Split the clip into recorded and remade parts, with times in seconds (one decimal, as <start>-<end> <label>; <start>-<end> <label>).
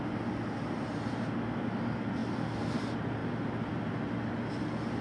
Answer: 0.0-2.2 recorded; 2.2-2.8 remade; 2.8-5.0 recorded